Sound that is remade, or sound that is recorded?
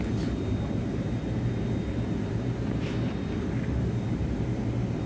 recorded